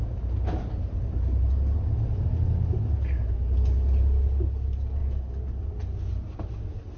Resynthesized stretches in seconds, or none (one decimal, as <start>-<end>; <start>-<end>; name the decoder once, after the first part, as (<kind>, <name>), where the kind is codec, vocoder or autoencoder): none